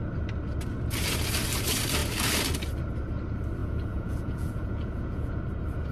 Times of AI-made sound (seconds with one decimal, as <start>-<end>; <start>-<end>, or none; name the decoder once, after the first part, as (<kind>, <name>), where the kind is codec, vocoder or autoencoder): 3.6-5.4 (vocoder, Vocos)